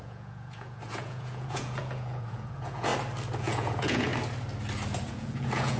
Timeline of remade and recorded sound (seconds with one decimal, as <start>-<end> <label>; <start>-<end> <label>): 0.0-2.9 remade; 2.9-3.4 recorded; 3.4-4.1 remade; 4.1-5.1 recorded; 5.1-5.8 remade